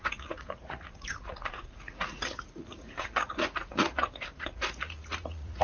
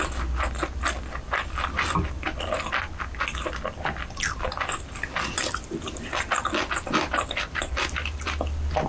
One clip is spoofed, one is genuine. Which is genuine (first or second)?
second